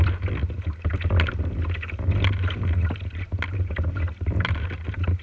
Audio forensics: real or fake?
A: real